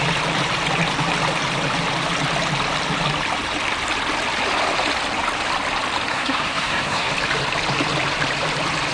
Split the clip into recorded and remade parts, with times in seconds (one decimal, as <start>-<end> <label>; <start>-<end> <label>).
0.0-6.1 recorded; 6.1-7.1 remade; 7.1-8.9 recorded